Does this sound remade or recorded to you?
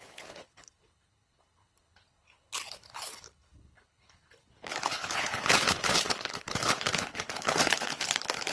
remade